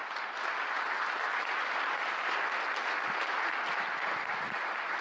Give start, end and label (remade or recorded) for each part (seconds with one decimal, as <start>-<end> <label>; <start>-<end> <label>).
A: 0.0-5.0 recorded